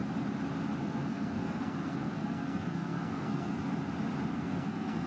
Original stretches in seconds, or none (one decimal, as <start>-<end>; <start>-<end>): 0.0-0.8; 3.7-4.3